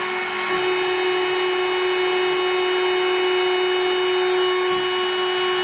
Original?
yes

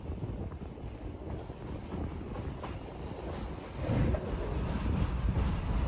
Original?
no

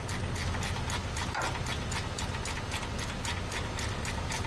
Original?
yes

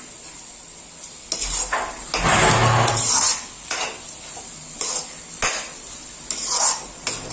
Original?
yes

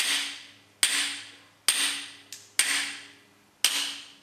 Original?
yes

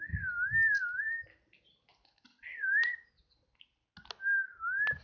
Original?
yes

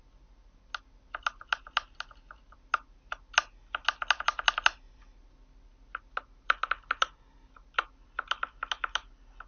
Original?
yes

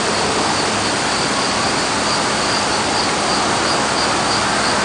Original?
no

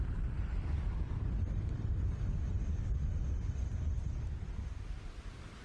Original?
no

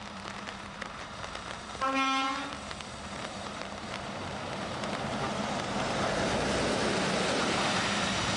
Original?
no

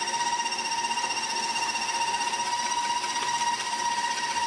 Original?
no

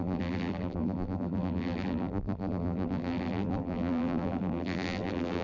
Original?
no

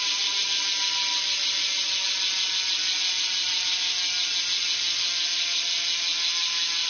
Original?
yes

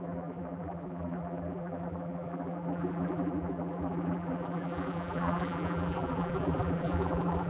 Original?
no